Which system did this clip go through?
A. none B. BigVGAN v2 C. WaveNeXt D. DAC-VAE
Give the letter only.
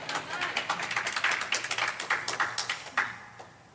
A